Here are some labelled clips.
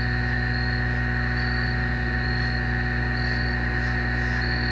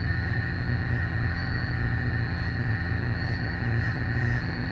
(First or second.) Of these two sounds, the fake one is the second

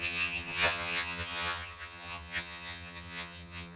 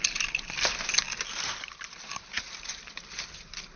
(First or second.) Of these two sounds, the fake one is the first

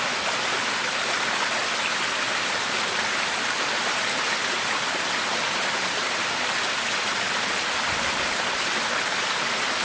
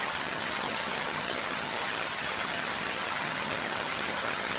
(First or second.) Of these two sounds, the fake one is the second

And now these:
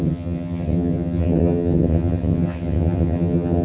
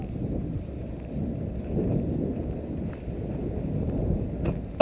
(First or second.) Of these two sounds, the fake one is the first